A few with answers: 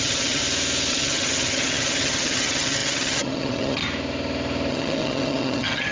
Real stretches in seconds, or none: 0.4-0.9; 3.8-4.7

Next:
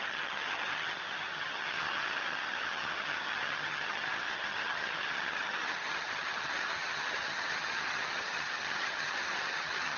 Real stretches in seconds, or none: none

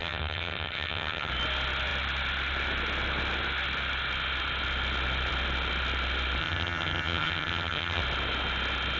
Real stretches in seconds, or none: 1.3-6.4; 8.0-9.0